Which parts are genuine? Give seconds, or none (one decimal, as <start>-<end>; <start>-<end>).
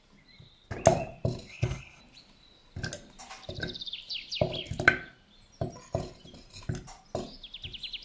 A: 0.0-1.5; 2.0-8.0